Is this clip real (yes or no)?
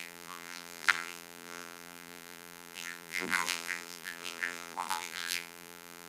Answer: no